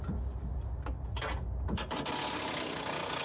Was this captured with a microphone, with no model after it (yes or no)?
yes